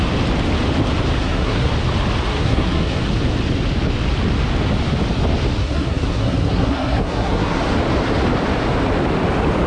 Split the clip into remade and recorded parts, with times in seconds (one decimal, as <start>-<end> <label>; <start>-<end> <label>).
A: 0.0-1.2 recorded; 1.2-1.7 remade; 1.7-2.3 recorded; 2.3-3.0 remade; 3.0-5.6 recorded; 5.6-7.6 remade; 7.6-9.7 recorded